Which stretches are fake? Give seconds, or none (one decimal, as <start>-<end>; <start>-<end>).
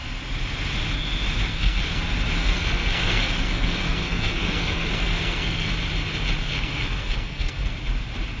1.5-2.0; 2.4-5.7; 6.4-7.8